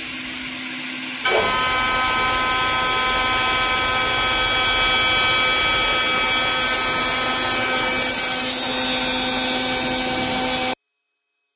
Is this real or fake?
real